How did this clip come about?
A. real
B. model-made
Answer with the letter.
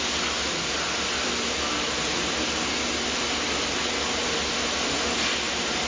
A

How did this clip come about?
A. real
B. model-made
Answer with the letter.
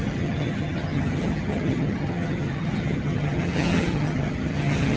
B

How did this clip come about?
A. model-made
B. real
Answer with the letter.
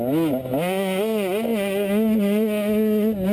B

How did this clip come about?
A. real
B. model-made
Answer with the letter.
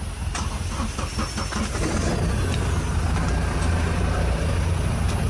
A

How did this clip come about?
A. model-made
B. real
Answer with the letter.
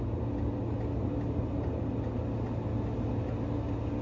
B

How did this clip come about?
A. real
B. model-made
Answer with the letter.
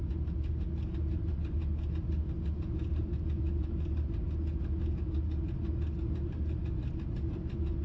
A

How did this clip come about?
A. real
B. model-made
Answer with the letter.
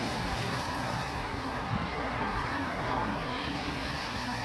B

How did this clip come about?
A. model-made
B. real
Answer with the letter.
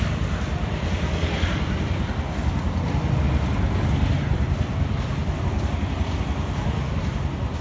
B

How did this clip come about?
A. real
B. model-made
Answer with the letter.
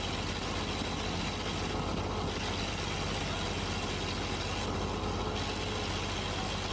A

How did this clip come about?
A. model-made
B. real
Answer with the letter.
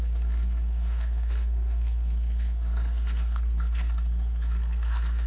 A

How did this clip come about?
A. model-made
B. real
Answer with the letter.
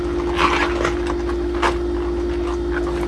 B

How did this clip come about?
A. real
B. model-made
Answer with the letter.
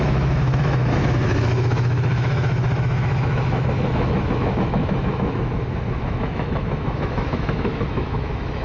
B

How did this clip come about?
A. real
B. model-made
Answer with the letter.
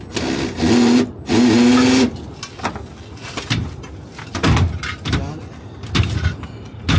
A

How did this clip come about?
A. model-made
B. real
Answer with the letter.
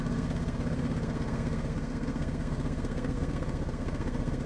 A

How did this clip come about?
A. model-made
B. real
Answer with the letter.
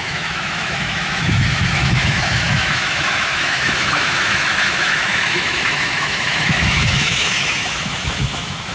A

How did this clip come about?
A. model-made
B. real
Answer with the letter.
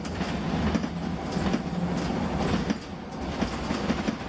B